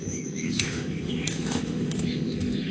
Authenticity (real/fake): fake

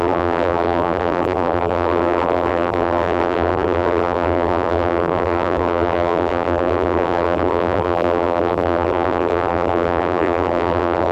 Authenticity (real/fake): fake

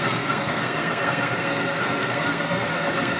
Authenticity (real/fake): fake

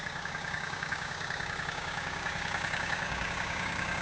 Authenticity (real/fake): fake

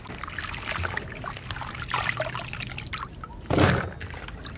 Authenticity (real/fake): real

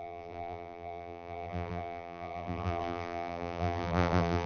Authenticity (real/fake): fake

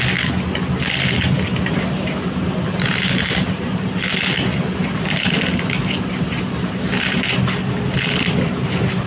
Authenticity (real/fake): real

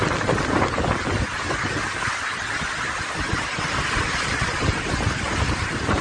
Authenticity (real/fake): real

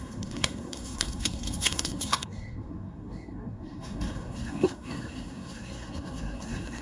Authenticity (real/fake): fake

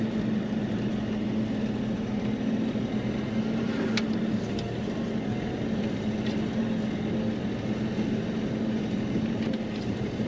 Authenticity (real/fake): real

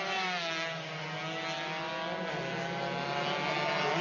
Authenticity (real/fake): real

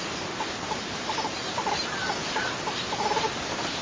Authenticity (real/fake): real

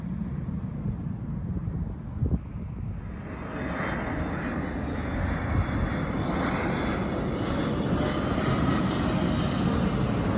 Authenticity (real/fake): real